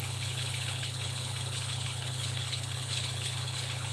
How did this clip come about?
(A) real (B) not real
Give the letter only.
B